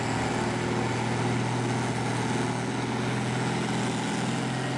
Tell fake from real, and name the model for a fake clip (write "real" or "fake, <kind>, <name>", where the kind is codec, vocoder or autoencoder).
real